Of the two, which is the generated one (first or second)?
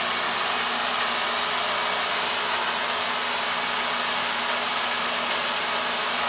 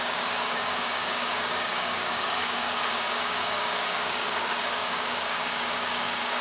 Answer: second